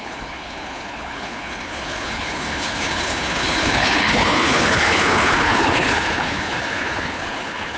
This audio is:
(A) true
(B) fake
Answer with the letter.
B